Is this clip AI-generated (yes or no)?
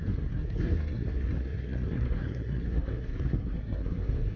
yes